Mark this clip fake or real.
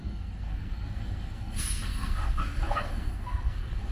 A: fake